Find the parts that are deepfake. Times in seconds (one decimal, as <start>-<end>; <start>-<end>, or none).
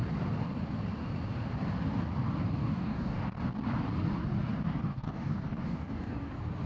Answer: 2.6-3.2; 4.9-6.3